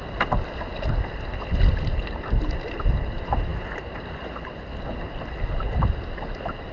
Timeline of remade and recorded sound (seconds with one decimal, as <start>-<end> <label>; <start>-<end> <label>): 0.0-6.7 recorded